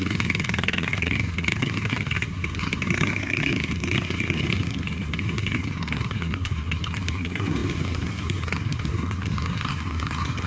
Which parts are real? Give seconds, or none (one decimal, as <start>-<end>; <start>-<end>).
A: none